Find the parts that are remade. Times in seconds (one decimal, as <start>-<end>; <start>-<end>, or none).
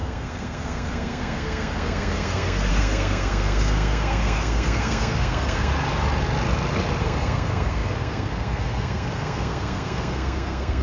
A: 0.0-5.7; 7.0-10.8